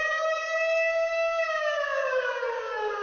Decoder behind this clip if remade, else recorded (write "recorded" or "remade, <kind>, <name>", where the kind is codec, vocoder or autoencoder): remade, codec, DAC